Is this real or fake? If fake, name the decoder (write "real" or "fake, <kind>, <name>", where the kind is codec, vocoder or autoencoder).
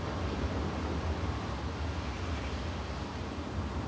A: real